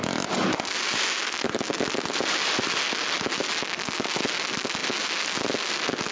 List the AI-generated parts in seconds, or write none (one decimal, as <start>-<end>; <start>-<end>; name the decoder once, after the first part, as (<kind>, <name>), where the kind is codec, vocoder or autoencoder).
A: 1.2-3.4 (vocoder, BigVGAN v2)